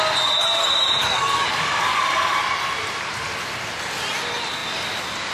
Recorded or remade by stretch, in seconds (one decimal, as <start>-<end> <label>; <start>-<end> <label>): 0.0-1.0 recorded; 1.0-2.4 remade; 2.4-5.3 recorded